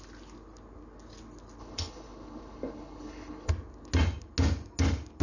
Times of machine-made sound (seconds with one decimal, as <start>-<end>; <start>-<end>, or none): 1.6-3.5